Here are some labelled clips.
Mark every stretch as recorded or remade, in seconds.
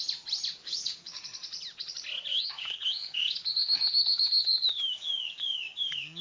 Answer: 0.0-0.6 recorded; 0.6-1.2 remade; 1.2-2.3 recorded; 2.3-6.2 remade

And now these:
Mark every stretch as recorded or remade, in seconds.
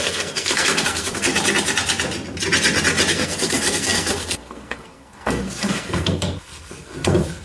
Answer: 0.0-1.3 remade; 1.3-3.1 recorded; 3.1-7.4 remade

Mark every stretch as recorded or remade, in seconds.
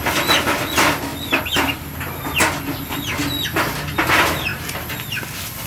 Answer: 0.0-5.7 recorded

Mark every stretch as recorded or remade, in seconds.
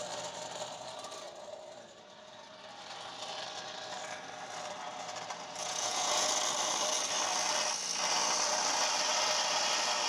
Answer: 0.0-5.6 recorded; 5.6-6.3 remade; 6.3-10.1 recorded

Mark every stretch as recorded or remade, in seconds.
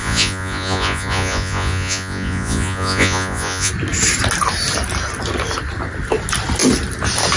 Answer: 0.0-3.7 remade; 3.7-7.4 recorded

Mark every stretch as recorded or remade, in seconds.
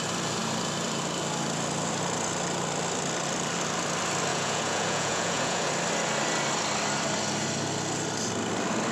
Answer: 0.0-4.3 recorded; 4.3-5.7 remade; 5.7-8.9 recorded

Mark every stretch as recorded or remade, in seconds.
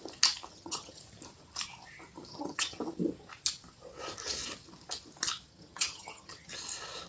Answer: 0.0-0.5 recorded; 0.5-1.0 remade; 1.0-2.3 recorded; 2.3-2.8 remade; 2.8-5.5 recorded; 5.5-6.5 remade; 6.5-7.1 recorded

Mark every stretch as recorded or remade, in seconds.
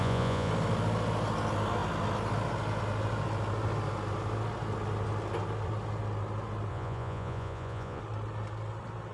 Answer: 0.0-0.5 remade; 0.5-6.7 recorded; 6.7-8.0 remade; 8.0-9.1 recorded